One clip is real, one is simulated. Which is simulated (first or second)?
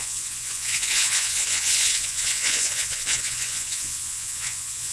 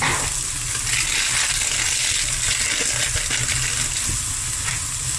first